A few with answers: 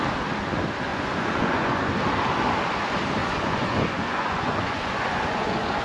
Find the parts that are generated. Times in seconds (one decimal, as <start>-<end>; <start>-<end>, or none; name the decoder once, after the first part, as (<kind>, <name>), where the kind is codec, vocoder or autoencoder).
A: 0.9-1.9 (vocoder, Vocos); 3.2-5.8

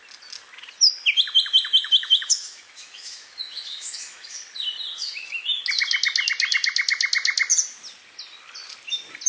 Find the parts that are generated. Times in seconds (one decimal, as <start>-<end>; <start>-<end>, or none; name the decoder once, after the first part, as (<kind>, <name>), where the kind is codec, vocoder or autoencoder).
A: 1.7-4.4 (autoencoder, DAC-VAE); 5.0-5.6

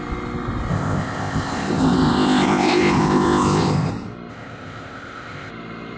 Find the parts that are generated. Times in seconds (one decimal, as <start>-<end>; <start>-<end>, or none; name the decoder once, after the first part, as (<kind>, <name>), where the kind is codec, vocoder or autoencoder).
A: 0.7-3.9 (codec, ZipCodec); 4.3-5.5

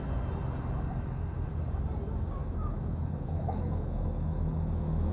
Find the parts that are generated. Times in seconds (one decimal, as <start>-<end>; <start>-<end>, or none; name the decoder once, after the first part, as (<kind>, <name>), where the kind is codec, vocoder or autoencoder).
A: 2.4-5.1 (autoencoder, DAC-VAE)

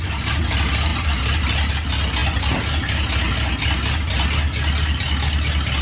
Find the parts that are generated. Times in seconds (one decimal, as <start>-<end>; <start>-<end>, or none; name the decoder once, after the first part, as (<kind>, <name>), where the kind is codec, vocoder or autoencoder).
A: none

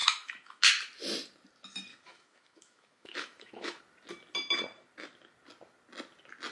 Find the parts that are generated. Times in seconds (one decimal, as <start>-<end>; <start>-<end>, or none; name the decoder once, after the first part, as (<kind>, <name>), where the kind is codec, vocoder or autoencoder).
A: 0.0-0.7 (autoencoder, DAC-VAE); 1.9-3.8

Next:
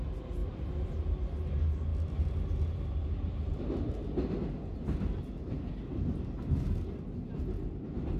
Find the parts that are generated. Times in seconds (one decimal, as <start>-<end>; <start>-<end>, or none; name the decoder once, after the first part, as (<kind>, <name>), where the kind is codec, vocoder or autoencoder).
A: 0.4-0.9 (vocoder, BigVGAN v2)

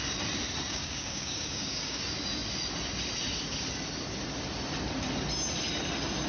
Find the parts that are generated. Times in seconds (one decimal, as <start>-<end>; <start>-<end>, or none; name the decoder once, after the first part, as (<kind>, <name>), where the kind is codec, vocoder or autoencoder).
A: 0.7-2.0 (codec, DAC)